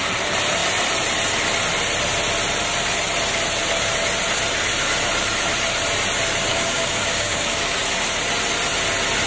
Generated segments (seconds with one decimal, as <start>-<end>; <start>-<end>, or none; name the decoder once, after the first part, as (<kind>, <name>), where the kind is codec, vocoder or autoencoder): 6.5-7.8 (codec, DAC)